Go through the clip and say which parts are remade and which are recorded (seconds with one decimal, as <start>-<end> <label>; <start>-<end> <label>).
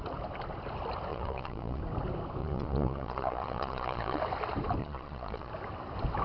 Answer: 0.0-1.1 recorded; 1.1-1.8 remade; 1.8-2.4 recorded; 2.4-4.2 remade; 4.2-4.8 recorded; 4.8-5.5 remade; 5.5-6.2 recorded